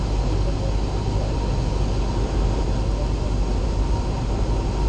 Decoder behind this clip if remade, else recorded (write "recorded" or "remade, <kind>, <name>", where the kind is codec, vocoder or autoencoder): recorded